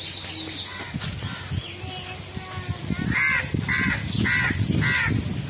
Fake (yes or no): no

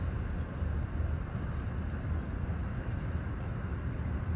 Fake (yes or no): no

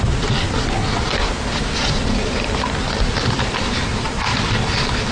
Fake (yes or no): no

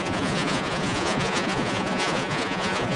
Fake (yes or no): yes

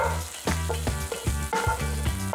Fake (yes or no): no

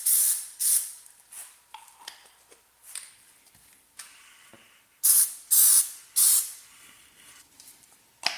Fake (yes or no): yes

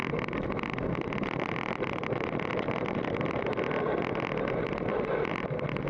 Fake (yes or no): no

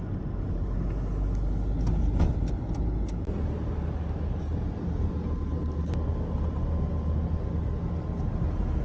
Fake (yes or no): no